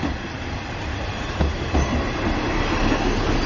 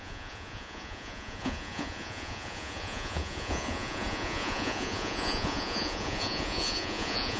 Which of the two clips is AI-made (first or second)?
second